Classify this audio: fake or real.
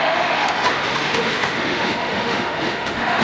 fake